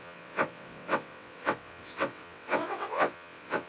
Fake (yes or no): yes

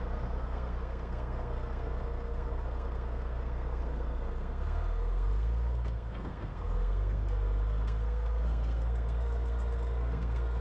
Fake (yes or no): yes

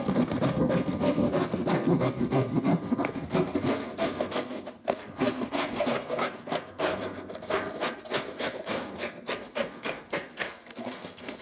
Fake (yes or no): yes